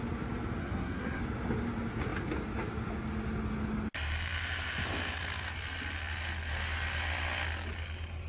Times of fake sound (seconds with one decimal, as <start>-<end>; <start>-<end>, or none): 0.6-1.2